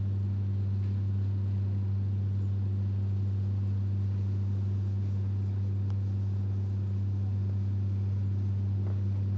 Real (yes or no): yes